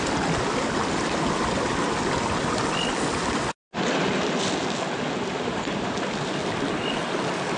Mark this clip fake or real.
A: real